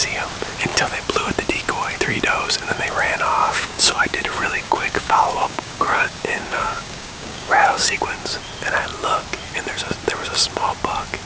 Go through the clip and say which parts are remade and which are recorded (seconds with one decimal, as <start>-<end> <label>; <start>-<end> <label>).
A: 0.0-3.4 recorded; 3.4-8.0 remade; 8.0-11.3 recorded